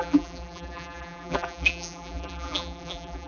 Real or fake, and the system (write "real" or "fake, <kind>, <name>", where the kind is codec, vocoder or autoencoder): fake, vocoder, BigVGAN v2